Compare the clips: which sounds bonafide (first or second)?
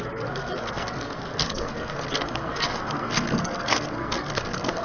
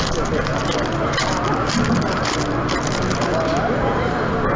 second